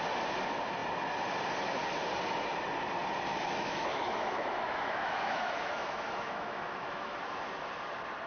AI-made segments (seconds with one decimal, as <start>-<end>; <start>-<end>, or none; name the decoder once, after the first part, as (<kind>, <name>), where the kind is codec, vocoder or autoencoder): 3.3-7.2 (autoencoder, DAC-VAE)